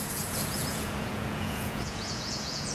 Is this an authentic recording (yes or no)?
no